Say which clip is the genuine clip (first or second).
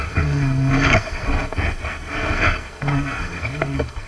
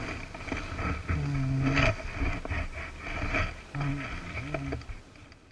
second